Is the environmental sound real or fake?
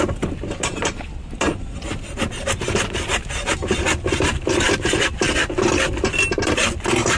real